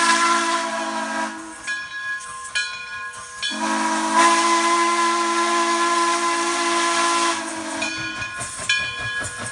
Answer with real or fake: real